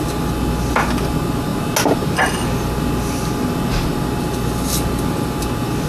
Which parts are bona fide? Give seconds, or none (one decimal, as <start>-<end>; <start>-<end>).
0.0-5.9